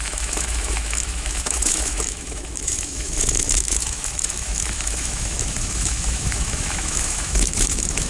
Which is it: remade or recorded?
remade